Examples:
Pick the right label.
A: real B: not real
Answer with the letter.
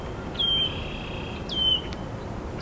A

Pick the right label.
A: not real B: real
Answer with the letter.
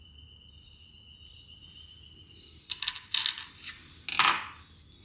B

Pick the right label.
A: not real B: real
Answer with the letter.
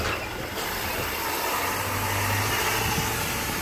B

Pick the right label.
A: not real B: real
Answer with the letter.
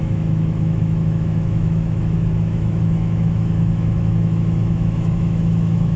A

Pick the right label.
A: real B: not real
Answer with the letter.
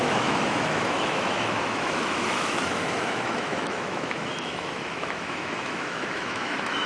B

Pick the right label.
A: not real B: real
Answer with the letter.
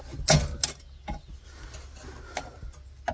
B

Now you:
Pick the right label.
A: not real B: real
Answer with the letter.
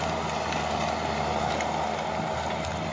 B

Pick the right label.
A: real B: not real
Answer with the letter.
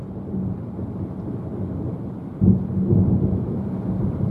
A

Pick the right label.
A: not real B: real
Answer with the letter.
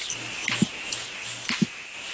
B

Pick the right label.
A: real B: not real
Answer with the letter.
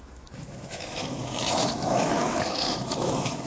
B